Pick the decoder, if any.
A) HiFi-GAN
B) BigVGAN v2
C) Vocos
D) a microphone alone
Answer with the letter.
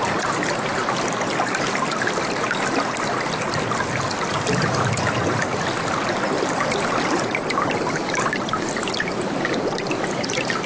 D